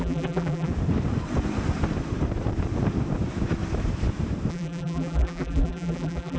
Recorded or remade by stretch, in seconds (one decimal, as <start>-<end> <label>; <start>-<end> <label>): 0.0-0.7 remade; 0.7-4.5 recorded; 4.5-6.4 remade